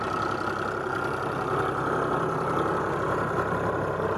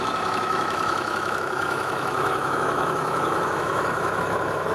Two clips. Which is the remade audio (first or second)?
second